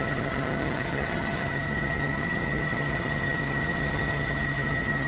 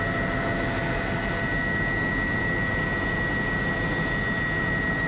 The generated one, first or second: first